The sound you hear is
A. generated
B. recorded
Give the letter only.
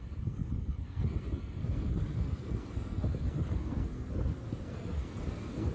A